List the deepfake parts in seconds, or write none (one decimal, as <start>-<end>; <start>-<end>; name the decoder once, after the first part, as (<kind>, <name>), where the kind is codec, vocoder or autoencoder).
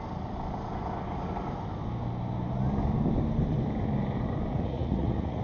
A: 4.5-5.4 (vocoder, Vocos)